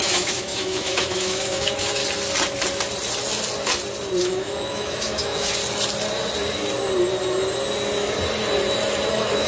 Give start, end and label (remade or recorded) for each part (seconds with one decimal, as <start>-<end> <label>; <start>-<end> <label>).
0.0-2.0 remade; 2.0-4.2 recorded; 4.2-5.6 remade; 5.6-9.1 recorded; 9.1-9.5 remade